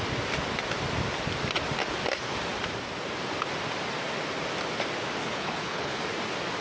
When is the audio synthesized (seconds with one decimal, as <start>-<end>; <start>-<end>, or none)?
5.2-6.0